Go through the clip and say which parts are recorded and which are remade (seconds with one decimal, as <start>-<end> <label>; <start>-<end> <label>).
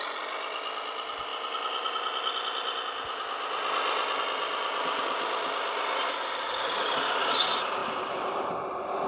0.0-9.1 recorded